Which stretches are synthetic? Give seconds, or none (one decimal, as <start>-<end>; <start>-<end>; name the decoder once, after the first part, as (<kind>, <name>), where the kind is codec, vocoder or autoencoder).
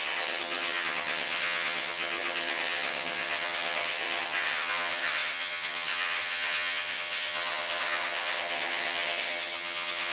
0.0-10.1 (vocoder, HiFi-GAN)